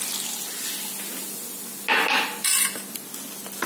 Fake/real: real